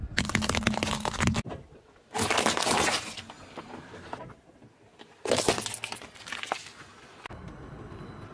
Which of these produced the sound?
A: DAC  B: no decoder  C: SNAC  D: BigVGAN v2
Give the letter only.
B